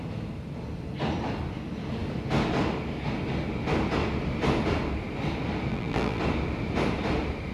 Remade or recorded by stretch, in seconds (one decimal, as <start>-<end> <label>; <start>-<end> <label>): 0.0-5.7 recorded; 5.7-6.2 remade; 6.2-7.5 recorded